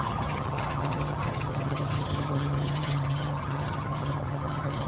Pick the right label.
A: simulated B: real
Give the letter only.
A